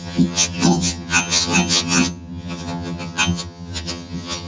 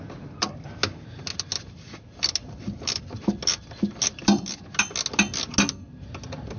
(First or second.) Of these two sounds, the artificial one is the first